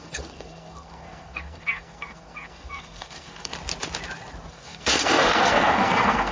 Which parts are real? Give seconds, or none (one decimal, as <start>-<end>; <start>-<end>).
3.5-4.5